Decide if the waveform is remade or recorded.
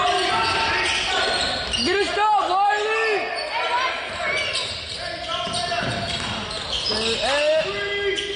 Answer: recorded